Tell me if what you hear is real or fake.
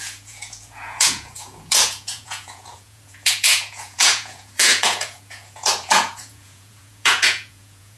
fake